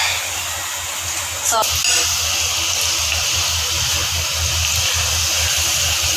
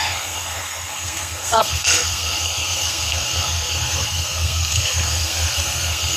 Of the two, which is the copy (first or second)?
second